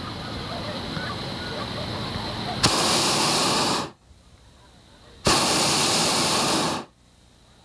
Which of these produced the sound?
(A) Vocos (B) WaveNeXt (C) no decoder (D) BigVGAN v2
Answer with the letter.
C